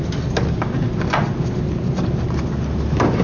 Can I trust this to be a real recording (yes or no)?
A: yes